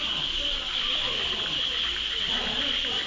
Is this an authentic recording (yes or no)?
yes